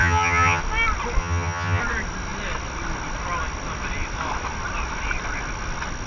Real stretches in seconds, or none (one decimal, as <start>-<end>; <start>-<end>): 0.6-1.2; 1.8-6.1